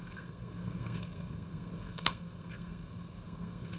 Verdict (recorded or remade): remade